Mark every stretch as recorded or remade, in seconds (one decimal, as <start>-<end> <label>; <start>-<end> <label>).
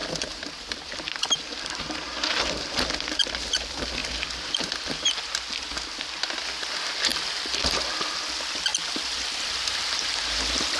0.0-4.0 recorded; 4.0-5.0 remade; 5.0-7.1 recorded; 7.1-7.7 remade; 7.7-8.7 recorded; 8.7-9.5 remade; 9.5-10.8 recorded